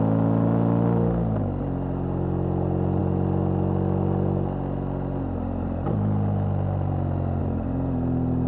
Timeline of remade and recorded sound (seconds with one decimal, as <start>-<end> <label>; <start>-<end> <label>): 0.0-8.5 recorded

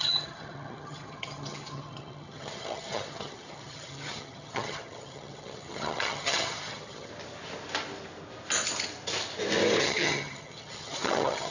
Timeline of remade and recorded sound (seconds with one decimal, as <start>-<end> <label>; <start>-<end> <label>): 0.0-7.1 remade; 7.1-9.8 recorded; 9.8-11.5 remade

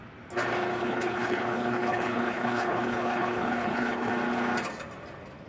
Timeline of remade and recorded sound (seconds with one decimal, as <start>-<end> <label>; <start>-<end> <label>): 0.0-0.8 recorded; 0.8-4.1 remade; 4.1-5.5 recorded

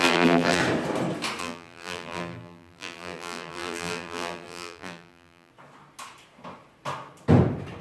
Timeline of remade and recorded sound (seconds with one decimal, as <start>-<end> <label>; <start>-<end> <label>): 0.0-0.6 remade; 0.6-1.4 recorded; 1.4-5.5 remade; 5.5-7.8 recorded

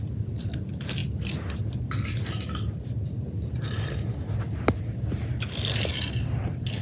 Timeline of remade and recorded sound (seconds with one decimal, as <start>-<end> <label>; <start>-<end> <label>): 0.0-6.8 recorded